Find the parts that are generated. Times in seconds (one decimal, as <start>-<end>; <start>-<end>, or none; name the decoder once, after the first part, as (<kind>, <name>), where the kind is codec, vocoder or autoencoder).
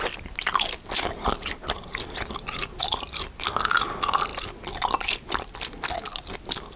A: none